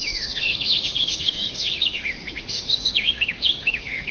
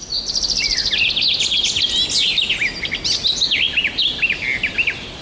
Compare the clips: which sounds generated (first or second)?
first